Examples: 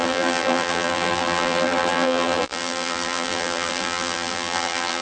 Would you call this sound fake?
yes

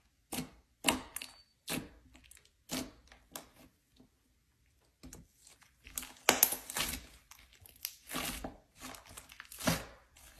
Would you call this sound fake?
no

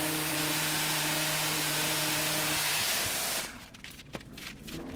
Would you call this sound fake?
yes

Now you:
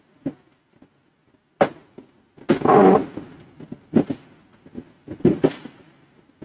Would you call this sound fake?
no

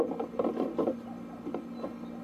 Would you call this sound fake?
no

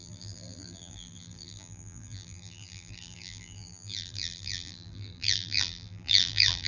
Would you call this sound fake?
yes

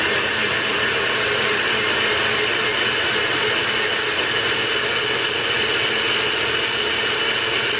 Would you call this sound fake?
no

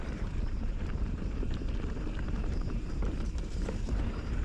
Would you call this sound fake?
yes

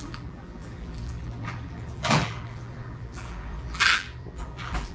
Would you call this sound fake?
yes